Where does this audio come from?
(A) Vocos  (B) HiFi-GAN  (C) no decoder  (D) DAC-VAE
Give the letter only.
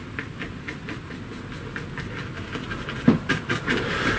C